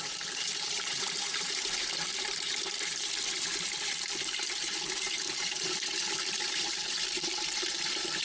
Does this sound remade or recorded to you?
remade